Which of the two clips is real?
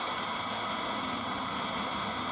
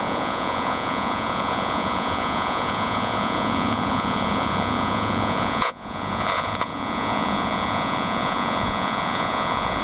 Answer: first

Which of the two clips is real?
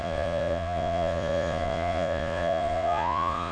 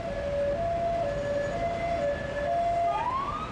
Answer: second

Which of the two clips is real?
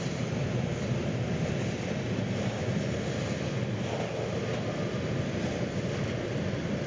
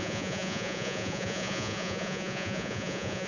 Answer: first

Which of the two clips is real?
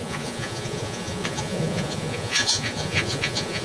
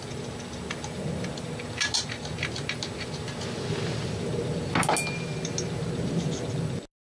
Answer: second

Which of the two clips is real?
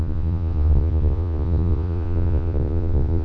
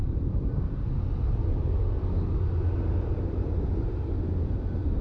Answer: second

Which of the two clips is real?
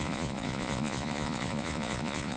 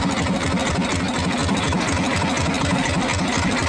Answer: second